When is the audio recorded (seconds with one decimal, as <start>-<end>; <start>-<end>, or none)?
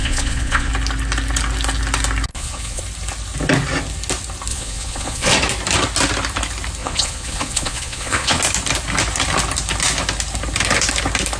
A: 0.7-2.3; 2.8-4.5; 5.3-6.8; 8.4-11.4